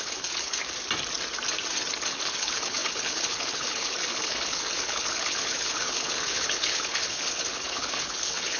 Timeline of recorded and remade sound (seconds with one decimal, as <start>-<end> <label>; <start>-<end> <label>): 0.0-0.6 remade; 0.6-2.1 recorded; 2.1-8.6 remade